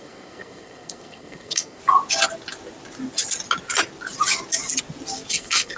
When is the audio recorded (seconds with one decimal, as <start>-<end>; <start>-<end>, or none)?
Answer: 1.8-5.3